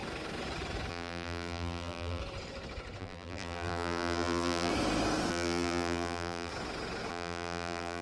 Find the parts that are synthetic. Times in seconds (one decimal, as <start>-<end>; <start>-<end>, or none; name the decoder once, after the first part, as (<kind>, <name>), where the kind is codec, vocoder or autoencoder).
0.9-2.2 (vocoder, BigVGAN v2); 3.0-4.7; 5.3-6.5; 7.1-8.0